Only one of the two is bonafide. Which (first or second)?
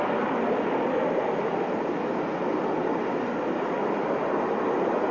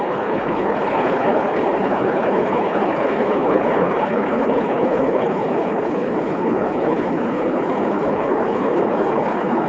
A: first